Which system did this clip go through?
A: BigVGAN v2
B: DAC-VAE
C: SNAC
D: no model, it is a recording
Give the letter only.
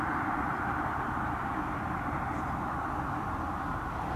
A